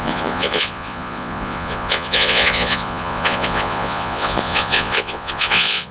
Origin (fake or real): fake